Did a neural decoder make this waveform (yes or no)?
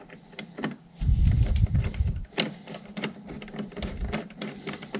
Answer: no